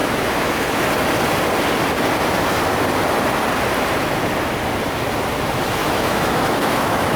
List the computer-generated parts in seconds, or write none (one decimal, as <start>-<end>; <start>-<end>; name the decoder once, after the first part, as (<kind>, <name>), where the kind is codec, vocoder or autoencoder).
0.0-0.8 (autoencoder, DAC-VAE); 5.8-7.2